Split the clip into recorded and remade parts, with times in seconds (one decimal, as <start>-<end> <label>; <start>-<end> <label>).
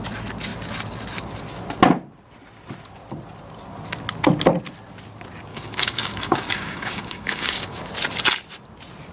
0.0-5.5 recorded; 5.5-7.8 remade; 7.8-9.1 recorded